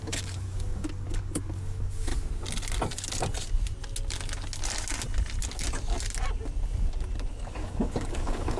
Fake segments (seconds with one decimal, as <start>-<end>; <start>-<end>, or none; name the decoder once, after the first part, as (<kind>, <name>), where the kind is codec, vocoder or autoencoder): 0.0-2.1 (codec, DAC); 7.3-8.6